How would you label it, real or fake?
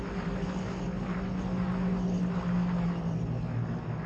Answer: real